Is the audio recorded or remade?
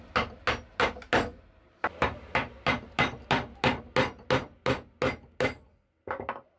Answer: recorded